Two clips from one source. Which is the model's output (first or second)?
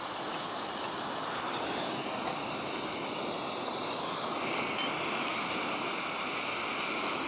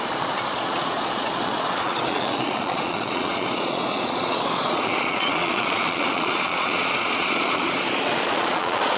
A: second